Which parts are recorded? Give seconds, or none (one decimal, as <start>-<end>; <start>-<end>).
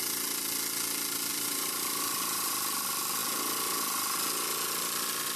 0.0-1.3; 2.5-5.4